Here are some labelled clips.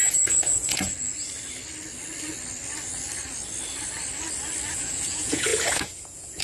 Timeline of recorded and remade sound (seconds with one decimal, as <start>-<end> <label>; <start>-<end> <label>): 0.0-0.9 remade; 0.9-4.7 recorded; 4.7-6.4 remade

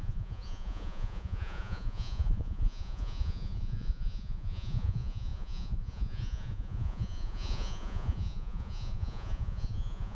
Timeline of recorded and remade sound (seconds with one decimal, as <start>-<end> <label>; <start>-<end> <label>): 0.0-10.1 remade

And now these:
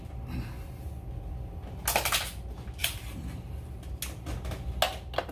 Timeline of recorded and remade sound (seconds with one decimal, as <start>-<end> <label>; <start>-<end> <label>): 0.0-2.8 recorded; 2.8-3.5 remade; 3.5-5.3 recorded

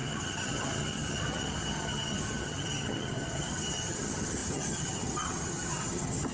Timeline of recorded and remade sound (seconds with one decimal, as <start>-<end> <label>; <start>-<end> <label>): 0.0-6.3 remade

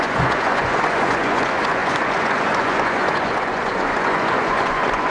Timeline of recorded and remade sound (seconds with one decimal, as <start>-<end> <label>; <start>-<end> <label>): 0.0-5.1 remade

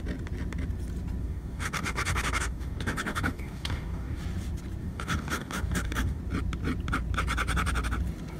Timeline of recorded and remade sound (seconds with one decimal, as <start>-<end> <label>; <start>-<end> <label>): 0.0-1.2 recorded; 1.2-4.2 remade; 4.2-4.8 recorded; 4.8-6.2 remade; 6.2-8.4 recorded

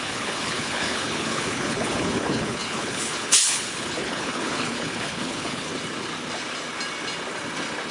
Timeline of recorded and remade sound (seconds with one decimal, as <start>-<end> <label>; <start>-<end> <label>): 0.0-5.7 remade; 5.7-7.9 recorded

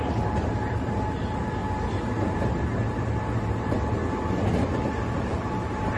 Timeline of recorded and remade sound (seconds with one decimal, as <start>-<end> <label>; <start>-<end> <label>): 0.0-1.6 remade; 1.6-2.2 recorded; 2.2-4.0 remade; 4.0-4.6 recorded; 4.6-6.0 remade